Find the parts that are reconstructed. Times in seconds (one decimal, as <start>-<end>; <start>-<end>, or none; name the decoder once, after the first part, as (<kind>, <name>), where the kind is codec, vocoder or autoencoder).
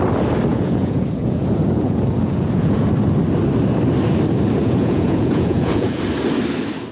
0.5-2.9 (vocoder, Vocos); 4.6-6.0